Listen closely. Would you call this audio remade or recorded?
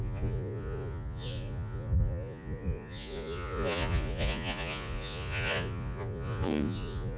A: remade